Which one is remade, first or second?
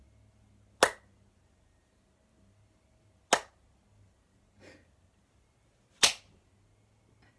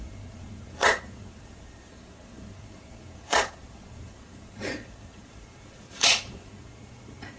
second